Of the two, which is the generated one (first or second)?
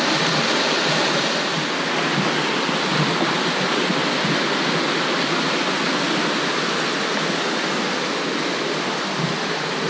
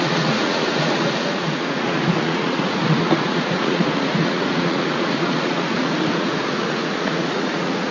second